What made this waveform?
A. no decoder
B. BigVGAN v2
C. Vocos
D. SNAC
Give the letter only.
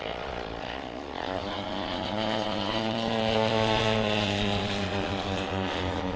C